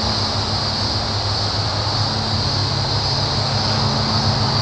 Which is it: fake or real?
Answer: real